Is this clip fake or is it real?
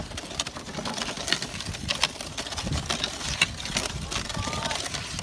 fake